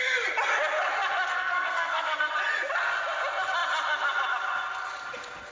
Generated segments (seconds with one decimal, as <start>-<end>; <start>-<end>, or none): 1.3-2.3